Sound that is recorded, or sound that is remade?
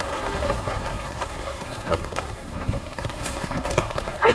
remade